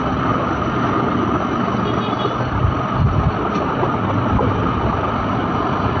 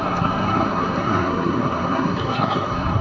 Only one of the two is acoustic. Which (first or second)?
first